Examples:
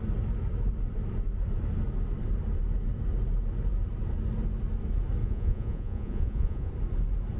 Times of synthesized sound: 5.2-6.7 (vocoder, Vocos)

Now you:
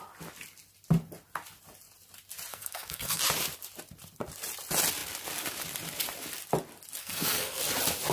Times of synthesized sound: 2.5-3.2 (codec, SNAC); 7.0-7.6

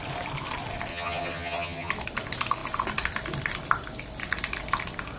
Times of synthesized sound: 0.9-1.9 (vocoder, HiFi-GAN)